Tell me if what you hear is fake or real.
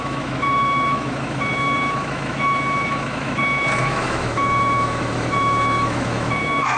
fake